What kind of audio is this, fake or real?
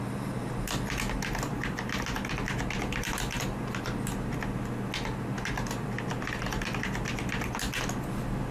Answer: real